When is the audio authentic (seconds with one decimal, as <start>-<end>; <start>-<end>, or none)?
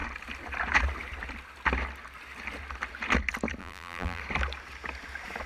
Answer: 0.0-3.6; 4.2-5.5